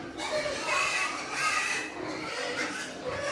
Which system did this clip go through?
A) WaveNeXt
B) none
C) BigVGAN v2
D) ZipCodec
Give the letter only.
B